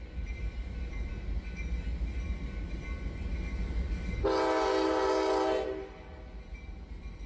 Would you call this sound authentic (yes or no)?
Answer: yes